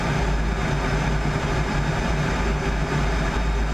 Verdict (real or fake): real